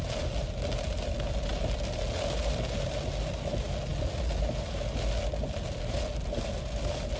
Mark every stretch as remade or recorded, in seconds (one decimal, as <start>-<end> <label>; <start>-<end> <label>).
0.0-7.2 recorded